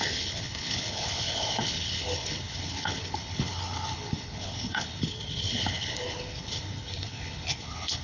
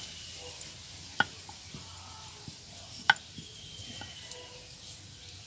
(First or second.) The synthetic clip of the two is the first